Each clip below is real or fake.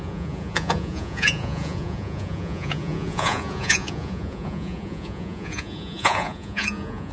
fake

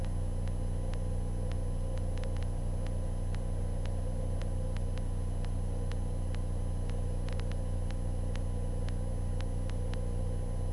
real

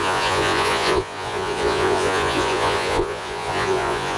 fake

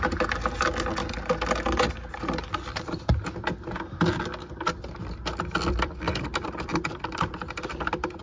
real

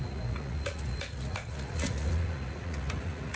fake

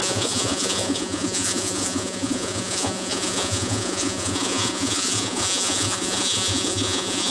fake